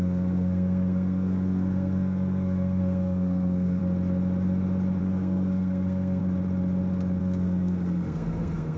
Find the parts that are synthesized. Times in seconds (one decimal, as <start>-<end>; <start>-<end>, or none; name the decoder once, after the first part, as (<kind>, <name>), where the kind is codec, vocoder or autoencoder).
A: 0.0-3.8 (codec, SNAC); 5.0-6.2; 7.2-8.8